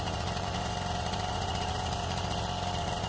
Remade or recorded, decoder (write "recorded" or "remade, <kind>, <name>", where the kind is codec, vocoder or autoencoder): remade, vocoder, BigVGAN v2